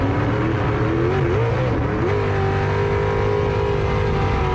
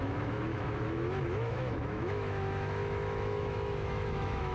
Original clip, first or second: first